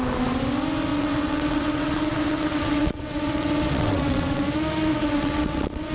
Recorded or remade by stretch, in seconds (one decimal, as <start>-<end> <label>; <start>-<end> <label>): 0.0-0.9 recorded; 0.9-4.4 remade; 4.4-4.9 recorded; 4.9-5.9 remade

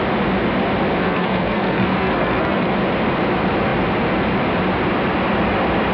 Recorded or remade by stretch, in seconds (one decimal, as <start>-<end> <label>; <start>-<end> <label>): 0.0-1.0 recorded; 1.0-2.7 remade; 2.7-5.9 recorded